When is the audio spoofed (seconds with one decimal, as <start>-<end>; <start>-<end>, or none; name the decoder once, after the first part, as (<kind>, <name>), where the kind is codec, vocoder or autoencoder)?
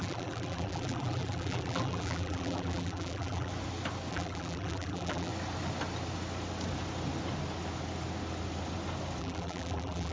0.0-3.5 (vocoder, BigVGAN v2); 4.1-5.3; 9.2-10.1